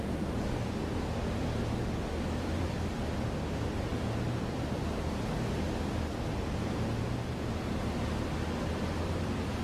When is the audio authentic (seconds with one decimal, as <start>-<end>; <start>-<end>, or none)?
0.0-9.6